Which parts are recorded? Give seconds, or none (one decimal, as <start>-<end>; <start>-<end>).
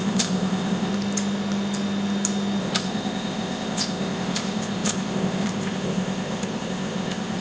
0.9-2.6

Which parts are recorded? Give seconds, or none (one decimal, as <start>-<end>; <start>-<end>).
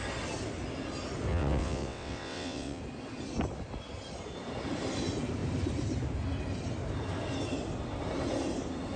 0.0-1.3; 2.8-9.0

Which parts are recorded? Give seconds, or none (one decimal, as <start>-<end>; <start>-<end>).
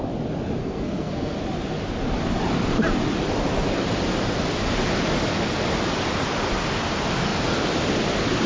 0.0-0.6; 1.4-8.5